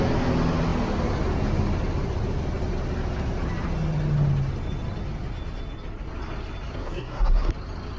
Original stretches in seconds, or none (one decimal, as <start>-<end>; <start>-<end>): 0.0-6.8; 7.5-8.0